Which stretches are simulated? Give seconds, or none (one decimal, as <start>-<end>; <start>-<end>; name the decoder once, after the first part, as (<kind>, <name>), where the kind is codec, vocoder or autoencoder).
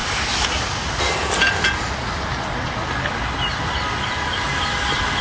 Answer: none